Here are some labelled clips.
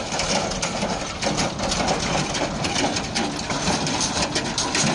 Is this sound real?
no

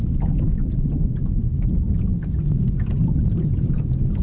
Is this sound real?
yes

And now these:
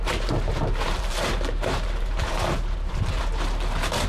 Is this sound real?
no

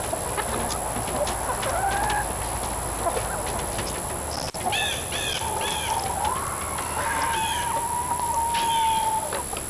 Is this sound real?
yes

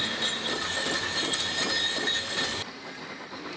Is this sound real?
yes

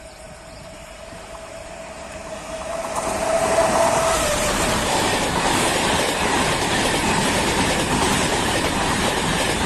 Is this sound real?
no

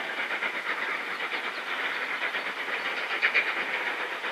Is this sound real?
no